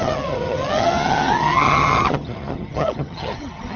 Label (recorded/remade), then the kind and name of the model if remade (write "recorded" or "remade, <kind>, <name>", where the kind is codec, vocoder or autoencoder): remade, vocoder, HiFi-GAN